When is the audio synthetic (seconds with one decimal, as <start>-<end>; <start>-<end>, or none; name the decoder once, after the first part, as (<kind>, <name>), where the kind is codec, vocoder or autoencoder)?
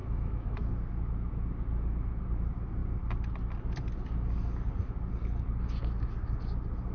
0.0-0.7 (autoencoder, DAC-VAE)